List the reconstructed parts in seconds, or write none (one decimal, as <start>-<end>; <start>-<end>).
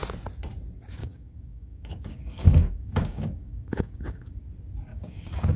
1.0-4.3; 4.9-5.6